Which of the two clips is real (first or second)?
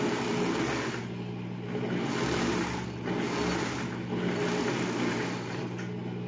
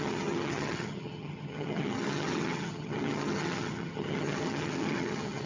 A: first